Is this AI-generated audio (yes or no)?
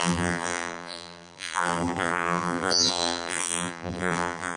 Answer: yes